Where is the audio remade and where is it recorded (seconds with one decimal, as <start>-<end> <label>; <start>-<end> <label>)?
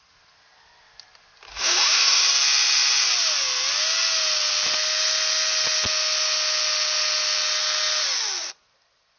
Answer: 0.0-1.5 recorded; 1.5-2.2 remade; 2.2-9.2 recorded